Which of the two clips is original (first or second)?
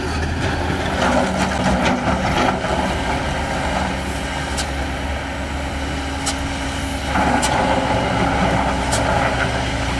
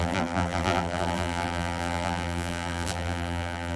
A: first